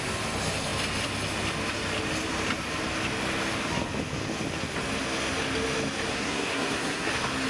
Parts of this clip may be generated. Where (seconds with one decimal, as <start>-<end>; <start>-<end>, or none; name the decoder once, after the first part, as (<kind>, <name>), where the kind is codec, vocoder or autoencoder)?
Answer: 6.1-7.1 (codec, SNAC)